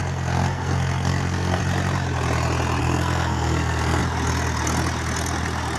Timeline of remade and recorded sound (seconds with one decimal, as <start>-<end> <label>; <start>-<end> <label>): 0.0-1.6 remade; 1.6-2.8 recorded; 2.8-4.0 remade; 4.0-5.8 recorded